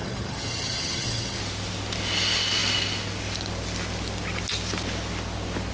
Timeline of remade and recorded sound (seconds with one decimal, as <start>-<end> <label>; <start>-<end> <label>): 0.0-1.4 remade; 1.4-5.7 recorded